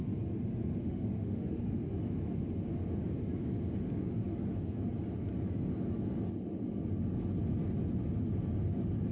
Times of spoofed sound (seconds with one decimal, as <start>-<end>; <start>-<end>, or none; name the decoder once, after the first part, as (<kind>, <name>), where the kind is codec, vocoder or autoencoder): 0.8-1.9 (autoencoder, DAC-VAE)